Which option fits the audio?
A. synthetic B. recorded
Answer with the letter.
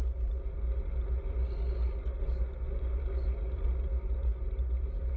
B